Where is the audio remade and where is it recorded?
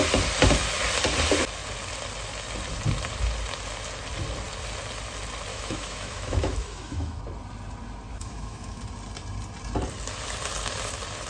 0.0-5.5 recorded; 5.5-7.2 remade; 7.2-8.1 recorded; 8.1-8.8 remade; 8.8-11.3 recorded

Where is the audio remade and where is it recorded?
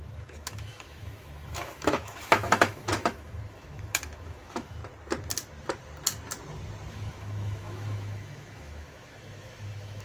0.0-4.8 remade; 4.8-6.9 recorded; 6.9-10.0 remade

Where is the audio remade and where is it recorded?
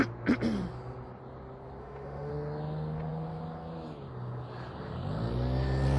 0.0-1.8 recorded; 1.8-2.3 remade; 2.3-6.0 recorded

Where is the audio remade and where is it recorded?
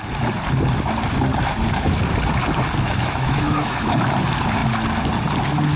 0.0-3.0 recorded; 3.0-4.0 remade; 4.0-5.8 recorded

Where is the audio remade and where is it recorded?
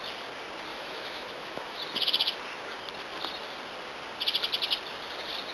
0.0-0.7 recorded; 0.7-1.8 remade; 1.8-5.5 recorded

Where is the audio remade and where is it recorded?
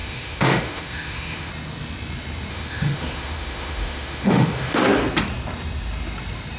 0.0-1.5 remade; 1.5-2.5 recorded; 2.5-4.8 remade; 4.8-6.6 recorded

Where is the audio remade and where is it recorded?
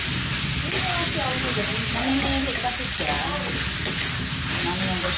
0.0-5.2 recorded